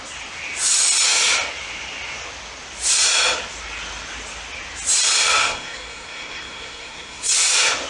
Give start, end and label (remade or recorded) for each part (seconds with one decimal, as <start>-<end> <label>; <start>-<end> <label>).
0.0-5.4 recorded; 5.4-7.3 remade; 7.3-7.9 recorded